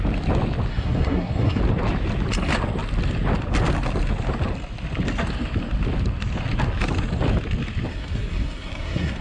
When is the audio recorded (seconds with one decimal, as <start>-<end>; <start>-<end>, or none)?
0.0-0.7; 1.6-7.9